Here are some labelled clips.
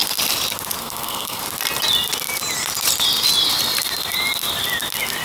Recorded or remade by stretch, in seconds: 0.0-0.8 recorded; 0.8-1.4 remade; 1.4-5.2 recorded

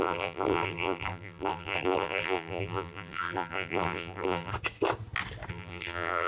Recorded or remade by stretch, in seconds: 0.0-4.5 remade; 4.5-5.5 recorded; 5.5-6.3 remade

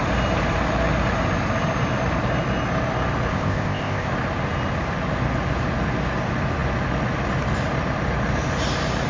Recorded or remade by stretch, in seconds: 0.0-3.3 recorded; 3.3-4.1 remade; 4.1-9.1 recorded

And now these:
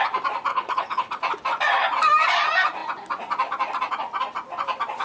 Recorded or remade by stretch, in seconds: 0.0-0.5 recorded; 0.5-1.2 remade; 1.2-5.0 recorded

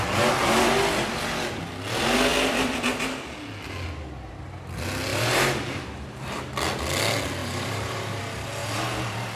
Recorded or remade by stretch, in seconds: 0.0-5.1 recorded; 5.1-6.3 remade; 6.3-7.4 recorded; 7.4-8.2 remade; 8.2-8.6 recorded; 8.6-9.4 remade

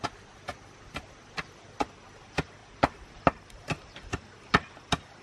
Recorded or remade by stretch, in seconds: 0.0-0.5 recorded; 0.5-1.1 remade; 1.1-5.2 recorded